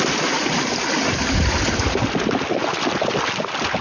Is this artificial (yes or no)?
no